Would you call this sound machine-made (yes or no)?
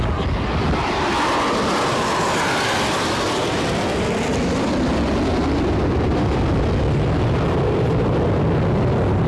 no